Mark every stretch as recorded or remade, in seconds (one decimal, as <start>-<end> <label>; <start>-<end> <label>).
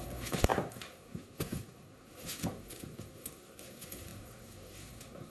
0.0-5.3 remade